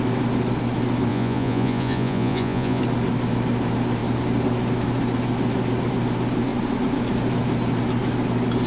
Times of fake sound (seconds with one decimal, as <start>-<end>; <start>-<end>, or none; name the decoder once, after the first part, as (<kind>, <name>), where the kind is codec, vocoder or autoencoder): 1.1-2.8 (vocoder, Vocos)